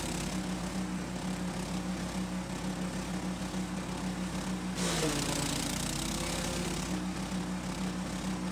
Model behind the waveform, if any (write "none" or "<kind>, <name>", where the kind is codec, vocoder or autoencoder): none